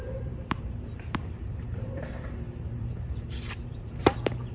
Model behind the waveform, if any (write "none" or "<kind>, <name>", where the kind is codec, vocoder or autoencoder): vocoder, BigVGAN v2